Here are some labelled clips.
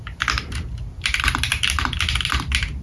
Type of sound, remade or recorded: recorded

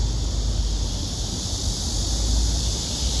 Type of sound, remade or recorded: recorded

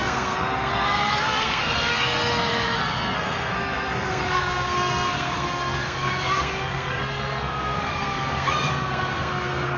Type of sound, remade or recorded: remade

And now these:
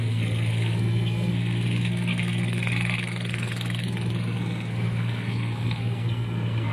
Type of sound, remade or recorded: remade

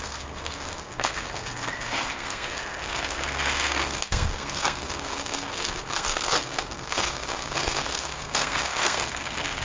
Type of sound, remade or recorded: remade